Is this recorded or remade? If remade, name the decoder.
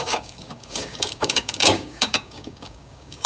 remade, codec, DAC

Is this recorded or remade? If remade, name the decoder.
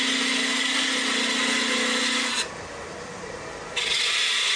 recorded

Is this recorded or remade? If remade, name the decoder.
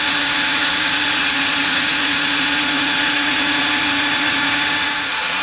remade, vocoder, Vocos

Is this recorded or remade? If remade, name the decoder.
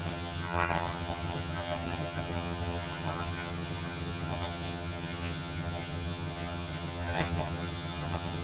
remade, vocoder, HiFi-GAN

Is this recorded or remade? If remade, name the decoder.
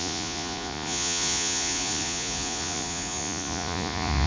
remade, vocoder, Vocos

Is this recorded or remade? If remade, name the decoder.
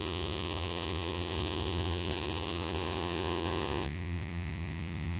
remade, vocoder, Vocos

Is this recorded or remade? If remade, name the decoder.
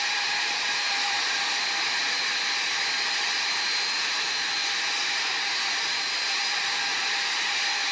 remade, vocoder, BigVGAN v2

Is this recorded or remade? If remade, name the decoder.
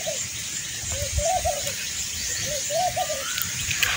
recorded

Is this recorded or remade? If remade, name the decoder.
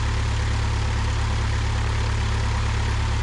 recorded